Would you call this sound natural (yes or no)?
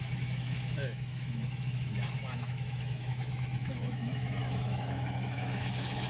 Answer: no